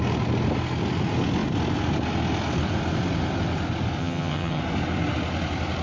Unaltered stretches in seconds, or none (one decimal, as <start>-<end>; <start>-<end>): 0.0-4.0; 4.6-5.8